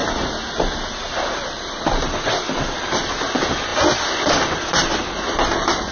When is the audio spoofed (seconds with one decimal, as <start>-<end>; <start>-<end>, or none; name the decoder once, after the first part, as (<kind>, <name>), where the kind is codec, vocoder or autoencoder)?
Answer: none